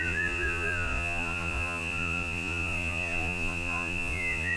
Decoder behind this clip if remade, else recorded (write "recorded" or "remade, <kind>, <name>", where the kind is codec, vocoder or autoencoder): remade, vocoder, Vocos